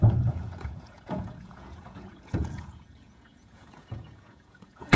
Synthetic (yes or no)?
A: yes